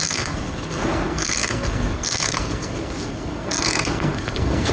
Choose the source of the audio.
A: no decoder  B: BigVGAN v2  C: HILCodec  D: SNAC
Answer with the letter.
D